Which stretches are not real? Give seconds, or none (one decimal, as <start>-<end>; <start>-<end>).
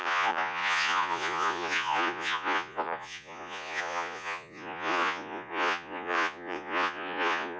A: 0.0-7.6